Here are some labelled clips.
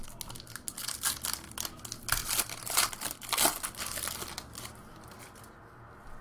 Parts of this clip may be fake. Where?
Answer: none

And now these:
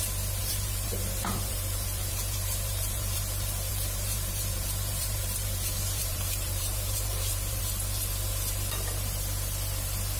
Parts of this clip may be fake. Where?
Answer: 0.4-3.2 (vocoder, BigVGAN v2); 3.7-7.6

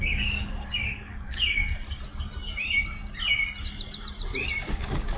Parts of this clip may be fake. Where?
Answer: 0.0-1.6 (codec, DAC); 4.7-5.2